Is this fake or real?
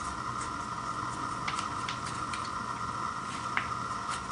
fake